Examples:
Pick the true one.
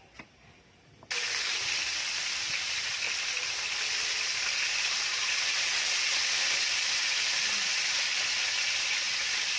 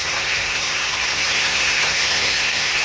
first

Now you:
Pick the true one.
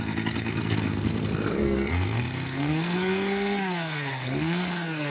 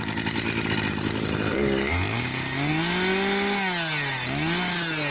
second